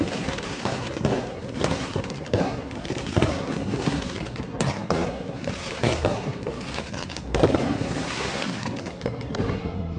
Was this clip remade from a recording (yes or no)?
yes